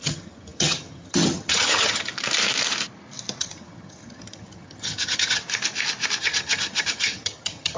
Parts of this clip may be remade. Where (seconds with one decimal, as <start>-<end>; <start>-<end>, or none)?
0.0-2.1; 3.4-5.4; 6.2-7.8